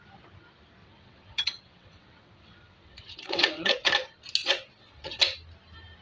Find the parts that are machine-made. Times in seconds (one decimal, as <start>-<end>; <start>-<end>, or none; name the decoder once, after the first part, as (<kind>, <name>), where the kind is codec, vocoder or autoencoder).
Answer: 0.8-3.9 (vocoder, WaveNeXt); 4.4-5.2